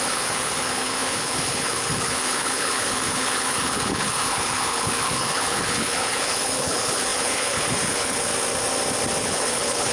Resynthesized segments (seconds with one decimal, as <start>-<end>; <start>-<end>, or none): 0.0-8.3; 9.2-9.9